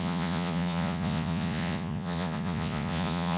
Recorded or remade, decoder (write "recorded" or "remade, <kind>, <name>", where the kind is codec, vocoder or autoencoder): remade, vocoder, Vocos